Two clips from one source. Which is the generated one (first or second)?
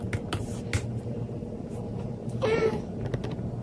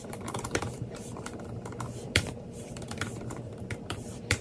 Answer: second